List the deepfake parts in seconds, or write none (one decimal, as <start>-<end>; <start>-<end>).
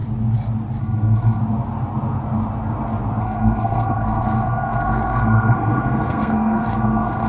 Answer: 0.8-1.4; 3.2-7.3